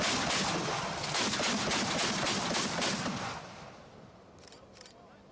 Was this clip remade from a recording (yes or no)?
no